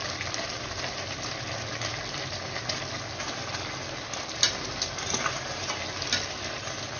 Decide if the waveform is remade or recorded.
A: recorded